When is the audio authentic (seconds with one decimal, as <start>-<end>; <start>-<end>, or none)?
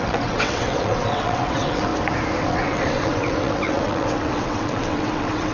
1.9-2.4